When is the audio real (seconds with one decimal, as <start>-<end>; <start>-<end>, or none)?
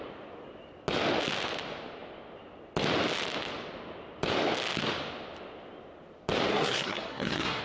0.0-6.5